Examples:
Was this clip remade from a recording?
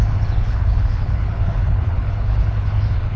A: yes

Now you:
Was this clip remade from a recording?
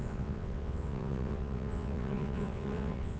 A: yes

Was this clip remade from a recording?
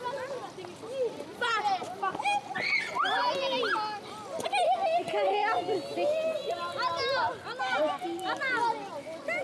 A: no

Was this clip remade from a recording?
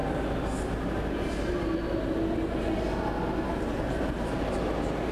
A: no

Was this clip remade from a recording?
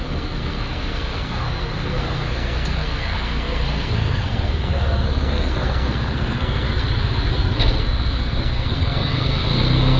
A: yes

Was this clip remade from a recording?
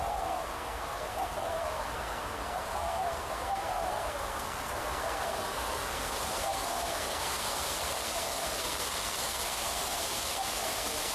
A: yes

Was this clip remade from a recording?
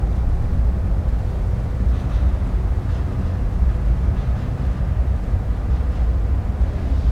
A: no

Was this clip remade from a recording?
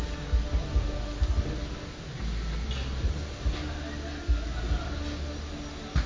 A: no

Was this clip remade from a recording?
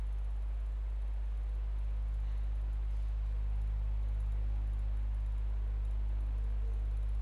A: no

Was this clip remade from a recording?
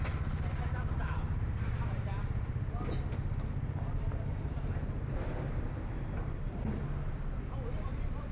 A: no